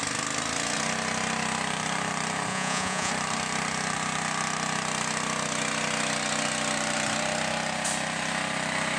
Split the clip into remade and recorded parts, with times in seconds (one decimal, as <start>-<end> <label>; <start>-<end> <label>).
0.0-2.5 recorded; 2.5-3.1 remade; 3.1-9.0 recorded